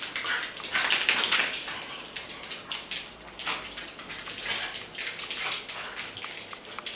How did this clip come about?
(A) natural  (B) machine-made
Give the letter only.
A